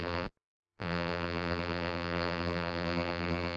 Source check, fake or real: fake